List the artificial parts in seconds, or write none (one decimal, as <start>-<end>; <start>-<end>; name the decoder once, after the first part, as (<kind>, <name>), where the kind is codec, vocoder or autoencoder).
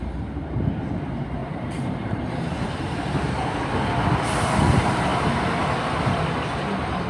1.4-3.3 (vocoder, BigVGAN v2)